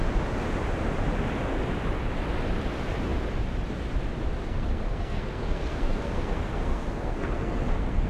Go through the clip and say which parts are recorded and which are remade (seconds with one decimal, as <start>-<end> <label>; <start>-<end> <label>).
0.0-4.4 recorded; 4.4-8.1 remade